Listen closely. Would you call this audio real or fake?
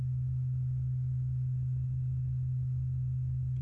real